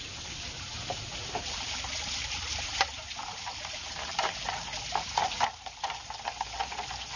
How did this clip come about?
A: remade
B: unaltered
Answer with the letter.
B